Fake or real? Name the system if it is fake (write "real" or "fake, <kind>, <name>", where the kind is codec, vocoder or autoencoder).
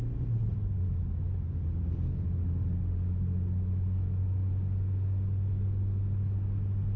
real